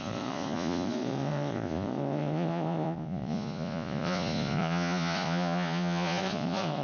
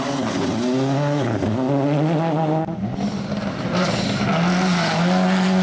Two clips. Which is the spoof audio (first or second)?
first